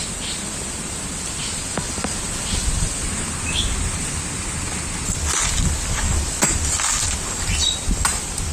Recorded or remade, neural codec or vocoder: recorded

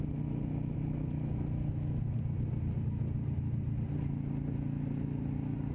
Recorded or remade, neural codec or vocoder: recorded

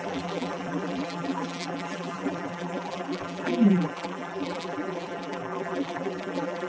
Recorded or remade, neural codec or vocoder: remade, vocoder, BigVGAN v2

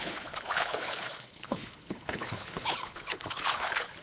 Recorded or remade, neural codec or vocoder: remade, codec, HILCodec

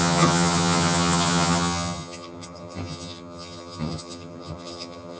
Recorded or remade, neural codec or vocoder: remade, vocoder, HiFi-GAN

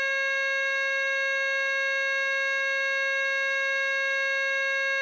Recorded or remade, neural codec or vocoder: recorded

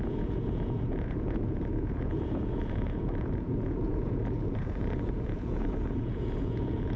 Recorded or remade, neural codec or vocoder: remade, vocoder, Vocos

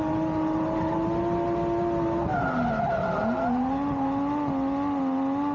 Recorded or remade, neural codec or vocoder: recorded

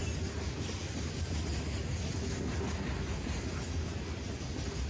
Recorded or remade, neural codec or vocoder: recorded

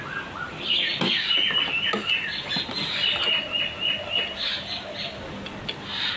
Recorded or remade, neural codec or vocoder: recorded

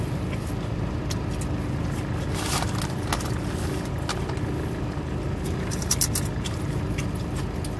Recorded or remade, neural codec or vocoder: recorded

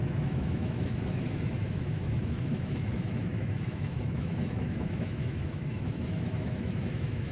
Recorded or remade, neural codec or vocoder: remade, autoencoder, DAC-VAE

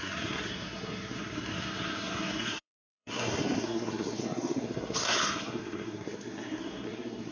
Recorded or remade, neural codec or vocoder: remade, codec, SNAC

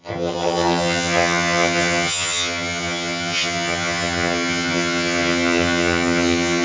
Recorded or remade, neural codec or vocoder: remade, vocoder, HiFi-GAN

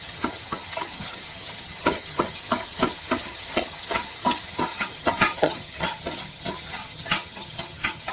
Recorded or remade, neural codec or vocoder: remade, vocoder, HiFi-GAN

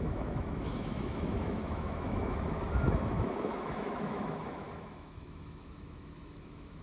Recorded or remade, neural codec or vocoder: remade, autoencoder, DAC-VAE